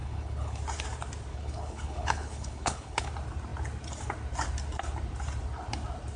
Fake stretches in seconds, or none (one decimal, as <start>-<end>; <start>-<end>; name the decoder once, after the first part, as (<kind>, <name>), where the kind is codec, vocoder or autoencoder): 0.0-0.6 (codec, HILCodec); 1.3-3.1